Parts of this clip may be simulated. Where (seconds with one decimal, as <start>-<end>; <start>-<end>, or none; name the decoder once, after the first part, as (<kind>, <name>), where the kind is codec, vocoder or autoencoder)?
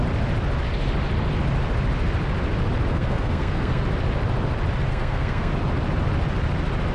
2.9-3.8 (codec, SNAC); 4.9-5.5